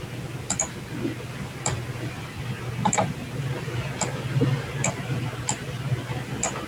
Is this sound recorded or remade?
recorded